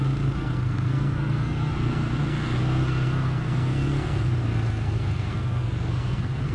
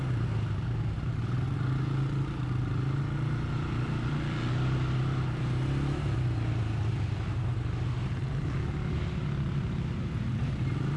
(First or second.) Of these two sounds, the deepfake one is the first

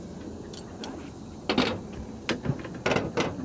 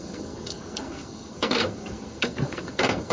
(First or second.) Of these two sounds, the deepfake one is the second